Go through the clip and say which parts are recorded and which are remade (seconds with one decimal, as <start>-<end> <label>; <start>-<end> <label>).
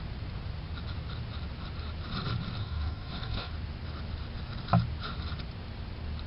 0.0-2.6 recorded; 2.6-3.5 remade; 3.5-6.3 recorded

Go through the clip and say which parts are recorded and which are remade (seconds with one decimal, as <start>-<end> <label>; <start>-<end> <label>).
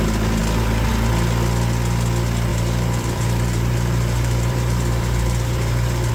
0.0-2.5 recorded; 2.5-6.1 remade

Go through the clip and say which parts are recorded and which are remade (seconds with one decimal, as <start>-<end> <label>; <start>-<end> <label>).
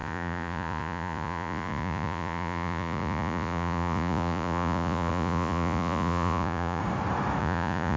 0.0-6.8 remade; 6.8-7.4 recorded; 7.4-8.0 remade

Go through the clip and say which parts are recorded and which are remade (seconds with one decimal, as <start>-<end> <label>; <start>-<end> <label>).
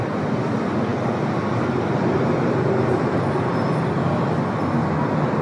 0.0-5.4 recorded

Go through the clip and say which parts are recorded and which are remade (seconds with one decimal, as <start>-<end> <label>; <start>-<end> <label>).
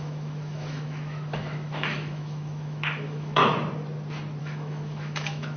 0.0-3.4 remade; 3.4-4.4 recorded; 4.4-5.6 remade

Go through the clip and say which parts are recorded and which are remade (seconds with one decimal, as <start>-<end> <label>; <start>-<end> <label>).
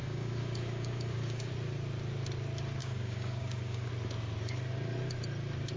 0.0-1.5 remade; 1.5-2.8 recorded; 2.8-3.9 remade; 3.9-5.8 recorded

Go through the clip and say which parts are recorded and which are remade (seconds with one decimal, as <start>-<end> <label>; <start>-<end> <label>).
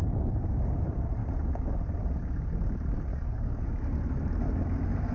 0.0-3.1 recorded; 3.1-3.7 remade; 3.7-5.1 recorded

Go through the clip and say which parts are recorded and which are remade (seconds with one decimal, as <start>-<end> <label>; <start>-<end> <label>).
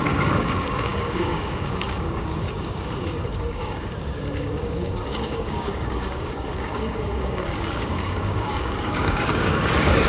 0.0-10.1 remade